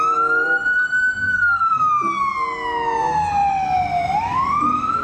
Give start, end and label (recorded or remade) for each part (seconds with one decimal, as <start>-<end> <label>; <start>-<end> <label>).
0.0-1.2 recorded; 1.2-1.9 remade; 1.9-5.0 recorded